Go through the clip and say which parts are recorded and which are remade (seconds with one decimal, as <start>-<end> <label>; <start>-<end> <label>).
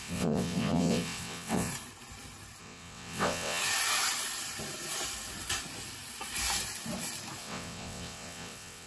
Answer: 0.0-1.7 remade; 1.7-2.6 recorded; 2.6-3.6 remade; 3.6-7.4 recorded; 7.4-8.9 remade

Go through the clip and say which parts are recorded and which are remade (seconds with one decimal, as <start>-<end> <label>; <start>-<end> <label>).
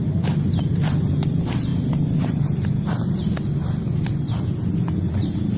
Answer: 0.0-5.6 recorded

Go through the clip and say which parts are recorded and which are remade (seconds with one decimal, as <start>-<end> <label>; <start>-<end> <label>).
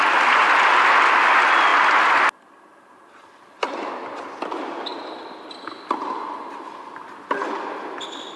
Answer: 0.0-8.4 recorded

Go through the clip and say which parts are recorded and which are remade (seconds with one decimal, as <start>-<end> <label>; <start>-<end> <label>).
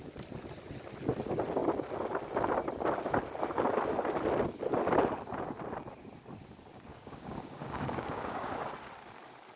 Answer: 0.0-6.9 recorded; 6.9-8.7 remade; 8.7-9.6 recorded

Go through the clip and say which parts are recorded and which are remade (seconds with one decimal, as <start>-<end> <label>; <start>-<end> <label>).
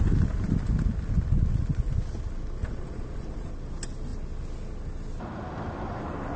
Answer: 0.0-2.6 recorded; 2.6-3.5 remade; 3.5-6.4 recorded